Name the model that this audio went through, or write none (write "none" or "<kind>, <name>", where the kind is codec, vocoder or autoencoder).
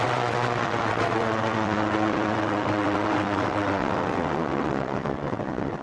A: vocoder, WaveNeXt